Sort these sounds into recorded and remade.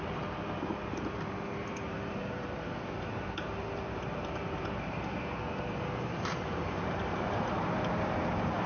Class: remade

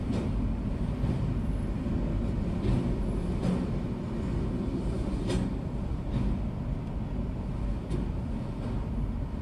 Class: recorded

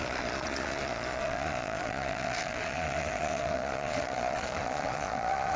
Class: remade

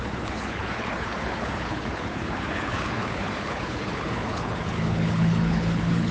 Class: remade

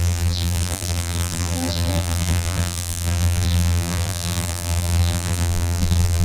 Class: remade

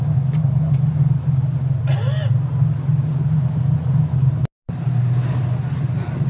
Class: recorded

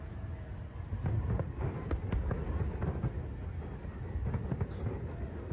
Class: recorded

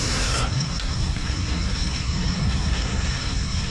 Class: remade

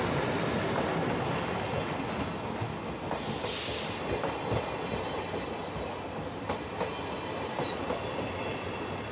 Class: recorded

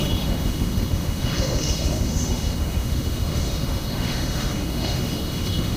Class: remade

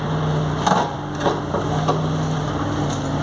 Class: recorded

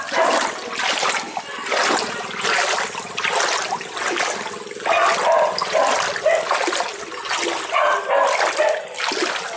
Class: recorded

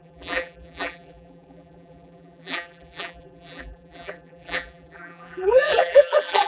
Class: remade